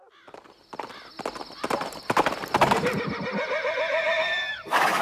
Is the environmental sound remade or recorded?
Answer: recorded